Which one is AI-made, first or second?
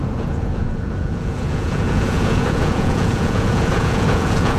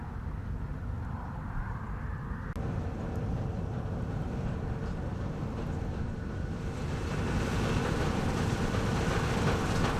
first